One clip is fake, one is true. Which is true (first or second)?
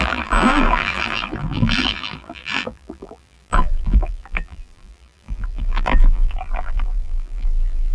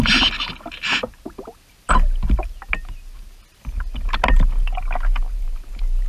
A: second